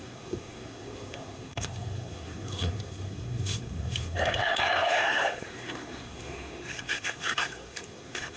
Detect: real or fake fake